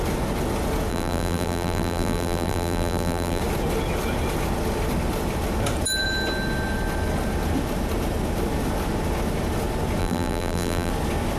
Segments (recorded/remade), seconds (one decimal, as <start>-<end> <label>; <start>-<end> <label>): 0.0-0.9 recorded; 0.9-3.4 remade; 3.4-10.0 recorded; 10.0-10.9 remade; 10.9-11.4 recorded